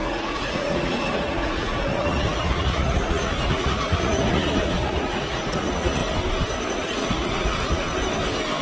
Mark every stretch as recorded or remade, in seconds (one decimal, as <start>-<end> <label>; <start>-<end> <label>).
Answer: 0.0-6.0 remade; 6.0-6.7 recorded; 6.7-7.9 remade; 7.9-8.6 recorded